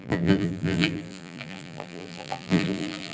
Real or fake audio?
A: fake